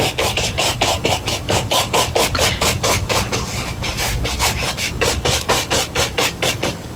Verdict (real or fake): fake